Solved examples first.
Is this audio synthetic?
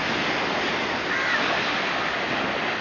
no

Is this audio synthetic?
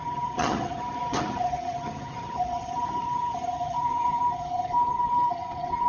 yes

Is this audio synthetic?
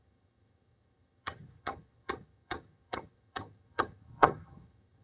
yes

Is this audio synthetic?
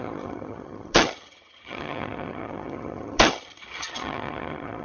yes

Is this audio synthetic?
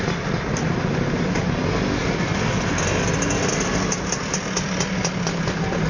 no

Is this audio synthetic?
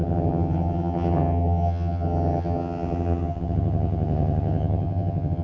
yes